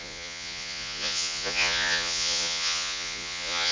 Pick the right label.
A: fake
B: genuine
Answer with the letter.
A